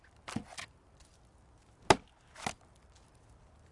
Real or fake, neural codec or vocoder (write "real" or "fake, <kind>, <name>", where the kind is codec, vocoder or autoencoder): real